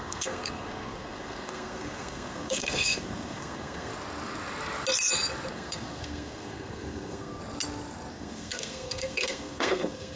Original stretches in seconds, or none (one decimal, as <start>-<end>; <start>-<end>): 3.9-5.5; 7.4-8.1

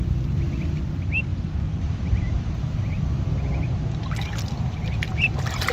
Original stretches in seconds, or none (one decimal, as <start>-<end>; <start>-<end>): 0.0-5.7